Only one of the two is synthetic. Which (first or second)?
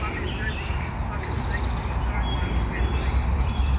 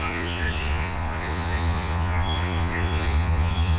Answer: second